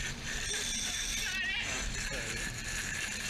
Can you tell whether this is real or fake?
fake